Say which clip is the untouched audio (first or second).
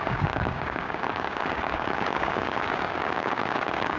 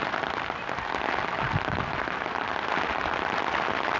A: second